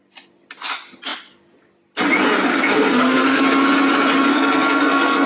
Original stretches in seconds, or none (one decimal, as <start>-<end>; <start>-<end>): 0.0-2.5; 3.4-4.3